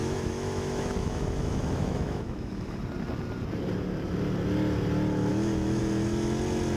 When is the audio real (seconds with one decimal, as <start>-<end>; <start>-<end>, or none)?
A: 2.8-5.3; 5.8-6.8